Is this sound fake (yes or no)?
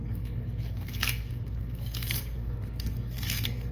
yes